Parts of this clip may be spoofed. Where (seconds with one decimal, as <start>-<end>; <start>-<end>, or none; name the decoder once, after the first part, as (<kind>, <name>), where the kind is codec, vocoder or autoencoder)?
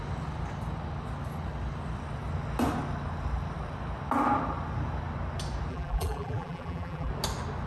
5.7-7.1 (vocoder, BigVGAN v2)